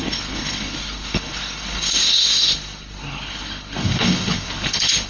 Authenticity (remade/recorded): remade